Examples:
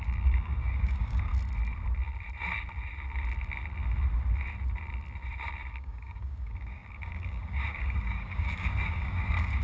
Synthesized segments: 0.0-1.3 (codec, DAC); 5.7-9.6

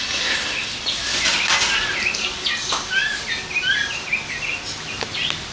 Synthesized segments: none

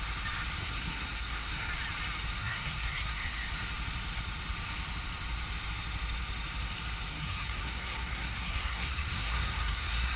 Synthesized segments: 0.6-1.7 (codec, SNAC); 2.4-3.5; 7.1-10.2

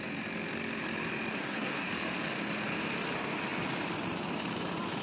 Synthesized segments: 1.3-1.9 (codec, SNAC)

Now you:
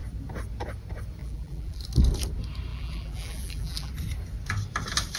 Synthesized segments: 1.2-1.8 (vocoder, BigVGAN v2); 2.7-3.9